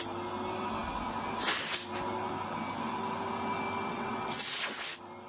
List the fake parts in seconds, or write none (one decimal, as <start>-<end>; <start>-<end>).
3.9-4.6